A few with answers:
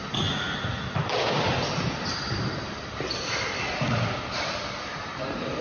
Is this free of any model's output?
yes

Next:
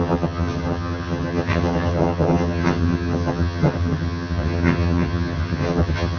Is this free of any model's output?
no